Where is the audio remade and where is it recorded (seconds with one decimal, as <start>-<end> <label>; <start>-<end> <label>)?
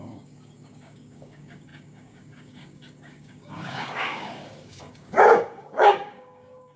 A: 0.0-6.8 remade